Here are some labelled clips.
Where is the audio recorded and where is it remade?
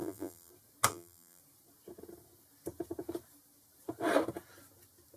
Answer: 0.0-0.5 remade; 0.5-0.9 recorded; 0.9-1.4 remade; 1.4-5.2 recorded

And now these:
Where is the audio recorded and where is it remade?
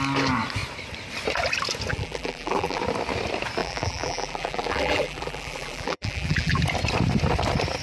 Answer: 0.0-1.9 recorded; 1.9-2.8 remade; 2.8-3.6 recorded; 3.6-6.6 remade; 6.6-7.8 recorded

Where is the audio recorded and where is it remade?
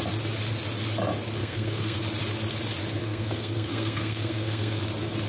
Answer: 0.0-1.4 recorded; 1.4-2.0 remade; 2.0-3.0 recorded; 3.0-4.8 remade; 4.8-5.3 recorded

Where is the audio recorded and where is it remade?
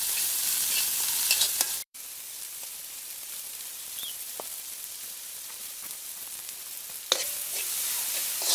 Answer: 0.0-1.8 recorded; 1.8-6.2 remade; 6.2-8.5 recorded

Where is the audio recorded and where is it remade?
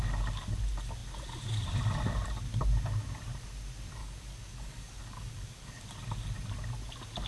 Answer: 0.0-4.0 recorded; 4.0-5.7 remade; 5.7-7.3 recorded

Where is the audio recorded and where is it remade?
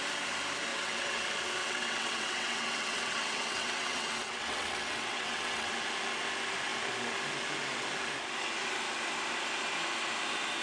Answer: 0.0-0.7 recorded; 0.7-1.2 remade; 1.2-1.6 recorded; 1.6-5.7 remade; 5.7-10.6 recorded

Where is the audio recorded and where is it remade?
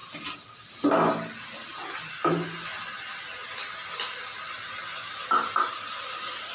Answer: 0.0-6.5 recorded